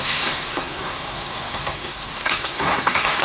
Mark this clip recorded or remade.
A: remade